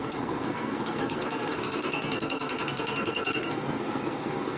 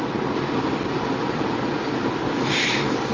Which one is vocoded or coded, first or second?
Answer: first